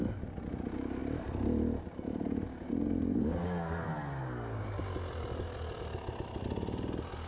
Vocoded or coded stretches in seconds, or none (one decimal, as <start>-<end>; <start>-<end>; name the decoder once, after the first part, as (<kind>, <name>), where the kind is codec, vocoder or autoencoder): none